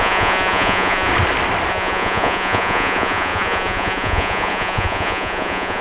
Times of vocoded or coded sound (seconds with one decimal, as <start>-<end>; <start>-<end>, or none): 0.0-1.1; 1.7-5.8